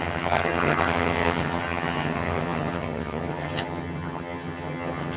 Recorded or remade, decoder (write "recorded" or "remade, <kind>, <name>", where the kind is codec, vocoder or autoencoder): remade, vocoder, HiFi-GAN